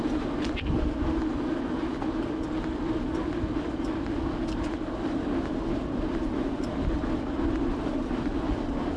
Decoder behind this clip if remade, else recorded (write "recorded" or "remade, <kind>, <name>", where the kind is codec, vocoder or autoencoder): recorded